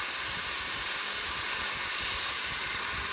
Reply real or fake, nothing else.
fake